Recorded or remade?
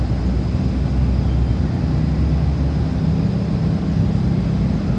recorded